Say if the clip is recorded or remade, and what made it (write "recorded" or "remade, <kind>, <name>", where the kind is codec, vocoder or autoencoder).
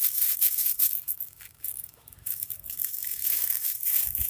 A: remade, autoencoder, DAC-VAE